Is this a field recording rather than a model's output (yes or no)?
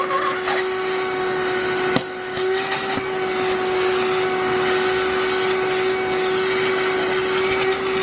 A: yes